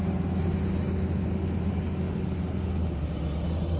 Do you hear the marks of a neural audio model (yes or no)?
no